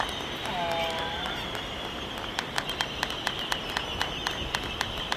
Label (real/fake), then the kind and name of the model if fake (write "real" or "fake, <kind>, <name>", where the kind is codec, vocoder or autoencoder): real